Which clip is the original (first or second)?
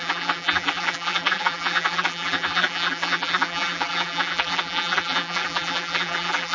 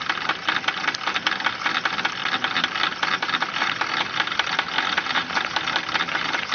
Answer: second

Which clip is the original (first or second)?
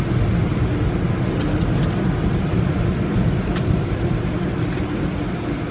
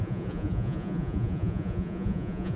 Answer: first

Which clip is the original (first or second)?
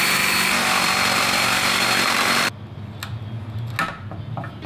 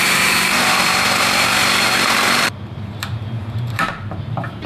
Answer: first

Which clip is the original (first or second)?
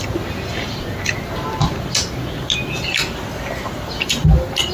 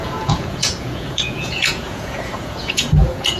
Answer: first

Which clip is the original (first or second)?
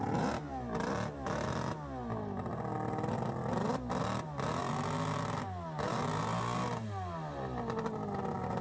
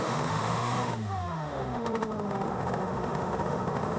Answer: first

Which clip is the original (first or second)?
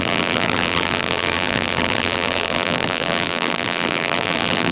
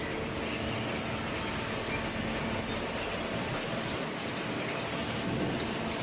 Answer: second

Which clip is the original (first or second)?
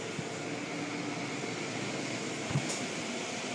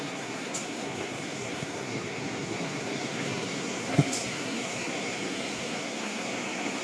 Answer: first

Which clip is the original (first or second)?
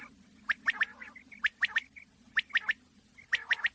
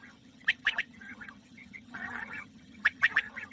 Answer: first